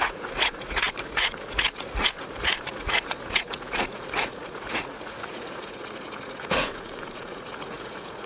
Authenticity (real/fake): fake